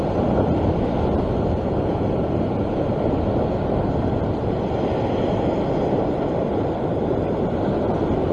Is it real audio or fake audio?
fake